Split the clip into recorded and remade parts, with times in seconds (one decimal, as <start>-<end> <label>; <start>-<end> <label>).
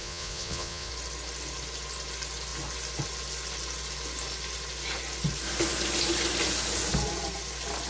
0.0-0.9 remade; 0.9-7.9 recorded